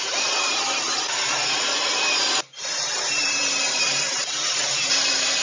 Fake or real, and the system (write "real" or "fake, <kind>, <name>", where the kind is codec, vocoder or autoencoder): fake, vocoder, BigVGAN v2